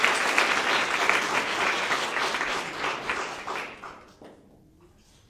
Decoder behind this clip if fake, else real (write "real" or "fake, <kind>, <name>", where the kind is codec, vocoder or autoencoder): real